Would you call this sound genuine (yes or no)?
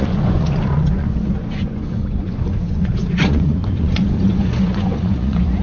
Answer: no